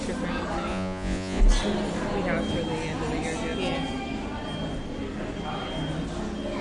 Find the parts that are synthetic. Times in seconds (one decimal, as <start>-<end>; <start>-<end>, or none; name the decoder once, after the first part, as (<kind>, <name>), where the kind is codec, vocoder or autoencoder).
0.7-1.4 (vocoder, Vocos)

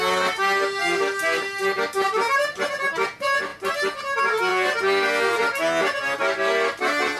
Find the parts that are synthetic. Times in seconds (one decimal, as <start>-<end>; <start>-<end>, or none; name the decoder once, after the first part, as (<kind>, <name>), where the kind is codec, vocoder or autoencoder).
none

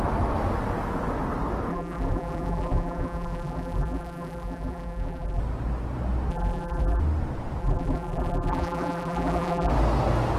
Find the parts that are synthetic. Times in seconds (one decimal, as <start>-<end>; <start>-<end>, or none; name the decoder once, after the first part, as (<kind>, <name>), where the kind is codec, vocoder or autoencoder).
1.7-5.4 (vocoder, BigVGAN v2); 6.3-7.0; 7.6-9.7

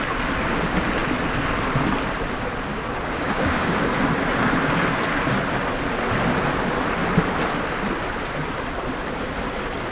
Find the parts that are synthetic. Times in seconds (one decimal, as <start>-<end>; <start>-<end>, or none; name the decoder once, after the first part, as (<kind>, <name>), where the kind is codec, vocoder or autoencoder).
2.7-3.8 (codec, DAC)

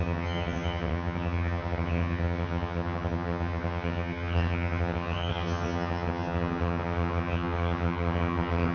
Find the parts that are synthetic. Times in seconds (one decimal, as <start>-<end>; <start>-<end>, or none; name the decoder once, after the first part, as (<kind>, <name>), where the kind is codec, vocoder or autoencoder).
0.0-8.7 (vocoder, HiFi-GAN)

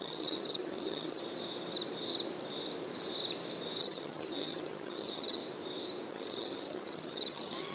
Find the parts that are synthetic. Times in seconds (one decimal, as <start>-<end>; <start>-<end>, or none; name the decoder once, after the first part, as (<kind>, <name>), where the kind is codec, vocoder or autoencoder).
0.0-1.2 (vocoder, HiFi-GAN); 3.8-5.4; 6.1-7.7